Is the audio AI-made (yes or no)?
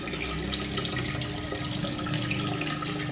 no